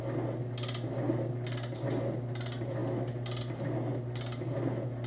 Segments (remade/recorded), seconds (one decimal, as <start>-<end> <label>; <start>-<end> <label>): 0.0-5.1 recorded